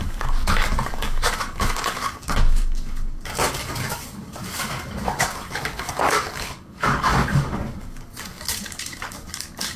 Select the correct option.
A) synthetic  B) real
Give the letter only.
A